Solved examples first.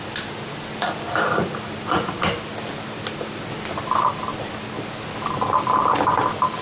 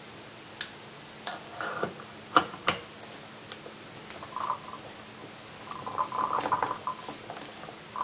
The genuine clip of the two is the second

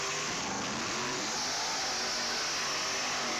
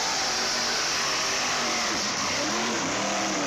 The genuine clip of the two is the first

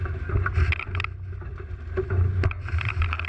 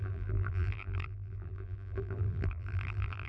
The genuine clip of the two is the first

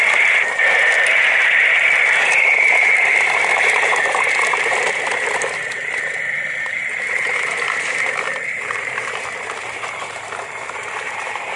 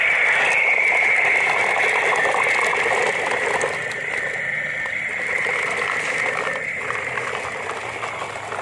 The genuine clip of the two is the second